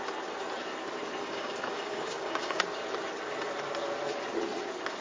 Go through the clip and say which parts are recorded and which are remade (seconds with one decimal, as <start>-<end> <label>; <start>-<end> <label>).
0.0-1.2 recorded; 1.2-2.6 remade; 2.6-5.0 recorded